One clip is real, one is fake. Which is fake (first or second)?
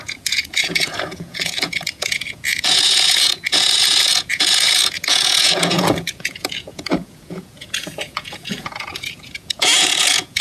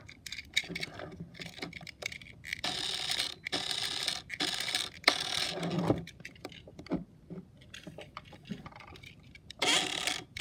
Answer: first